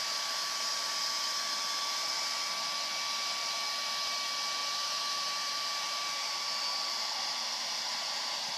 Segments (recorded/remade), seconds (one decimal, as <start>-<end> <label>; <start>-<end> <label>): 0.0-4.6 recorded; 4.6-6.5 remade; 6.5-8.6 recorded